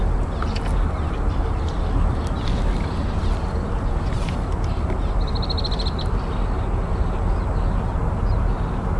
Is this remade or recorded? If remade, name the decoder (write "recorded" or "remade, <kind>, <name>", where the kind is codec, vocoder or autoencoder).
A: recorded